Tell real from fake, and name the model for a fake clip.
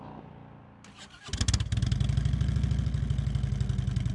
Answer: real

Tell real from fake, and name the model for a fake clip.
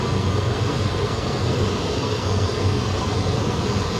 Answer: fake, codec, SNAC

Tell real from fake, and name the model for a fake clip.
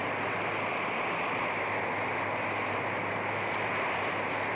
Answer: real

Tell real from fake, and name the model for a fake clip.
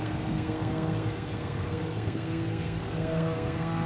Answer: fake, codec, SNAC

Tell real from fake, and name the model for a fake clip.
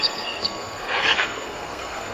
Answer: fake, codec, SNAC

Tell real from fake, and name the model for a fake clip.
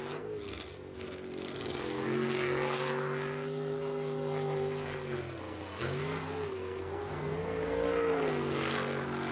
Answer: fake, codec, SNAC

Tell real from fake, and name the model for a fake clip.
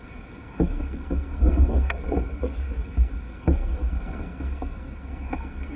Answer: fake, codec, SNAC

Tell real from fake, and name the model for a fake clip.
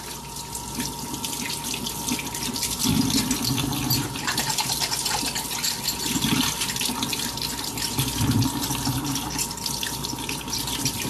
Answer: real